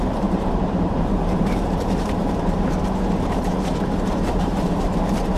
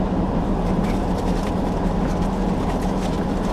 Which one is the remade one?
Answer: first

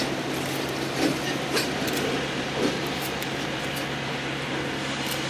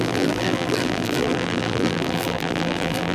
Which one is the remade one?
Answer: second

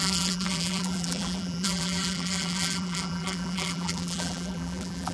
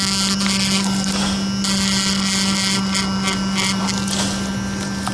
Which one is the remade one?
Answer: first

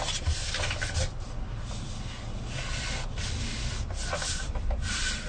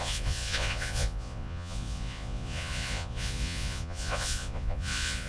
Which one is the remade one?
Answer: second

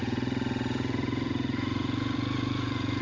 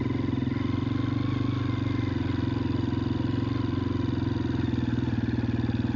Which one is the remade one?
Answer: first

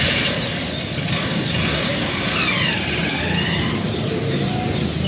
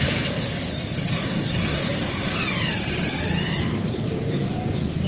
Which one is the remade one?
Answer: second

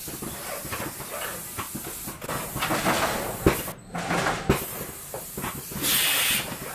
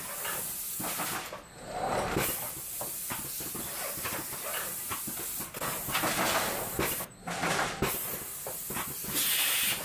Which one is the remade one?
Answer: second